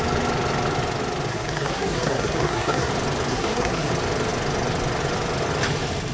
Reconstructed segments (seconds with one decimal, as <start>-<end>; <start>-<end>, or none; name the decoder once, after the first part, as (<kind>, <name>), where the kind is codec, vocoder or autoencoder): 1.3-2.9 (codec, SNAC); 3.3-3.9